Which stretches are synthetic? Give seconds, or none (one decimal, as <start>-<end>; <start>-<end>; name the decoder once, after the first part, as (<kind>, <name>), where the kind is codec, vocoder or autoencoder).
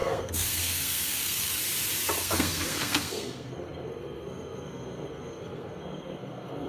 0.0-1.6 (codec, SNAC); 2.2-6.7